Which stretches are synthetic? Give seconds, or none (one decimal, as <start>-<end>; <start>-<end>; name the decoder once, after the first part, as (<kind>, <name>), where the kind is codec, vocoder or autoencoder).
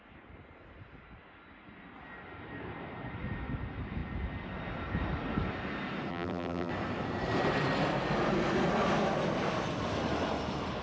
6.1-6.7 (vocoder, BigVGAN v2)